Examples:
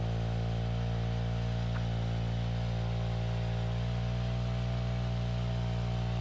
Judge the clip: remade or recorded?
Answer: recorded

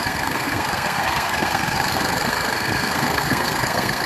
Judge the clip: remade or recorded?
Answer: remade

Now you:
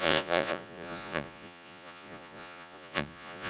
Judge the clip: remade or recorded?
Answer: remade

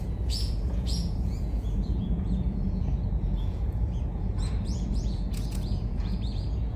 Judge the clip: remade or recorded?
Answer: remade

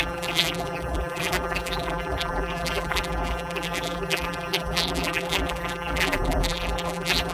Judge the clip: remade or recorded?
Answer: remade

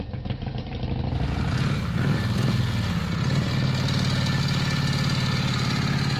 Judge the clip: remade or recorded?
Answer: recorded